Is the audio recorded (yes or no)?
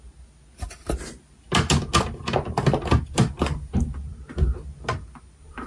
yes